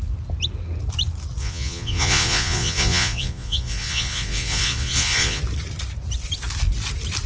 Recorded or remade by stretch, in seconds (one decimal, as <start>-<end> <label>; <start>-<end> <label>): 0.0-1.4 recorded; 1.4-5.4 remade; 5.4-7.3 recorded